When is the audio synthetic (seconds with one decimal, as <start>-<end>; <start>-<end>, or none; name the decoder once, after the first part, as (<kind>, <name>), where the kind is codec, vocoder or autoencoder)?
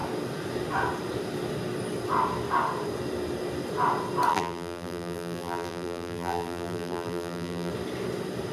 4.3-7.7 (vocoder, BigVGAN v2)